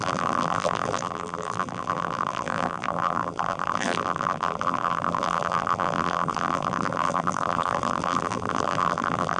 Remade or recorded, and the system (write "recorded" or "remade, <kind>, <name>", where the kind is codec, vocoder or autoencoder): remade, vocoder, BigVGAN v2